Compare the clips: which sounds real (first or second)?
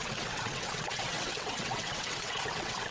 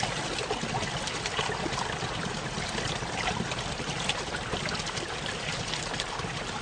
second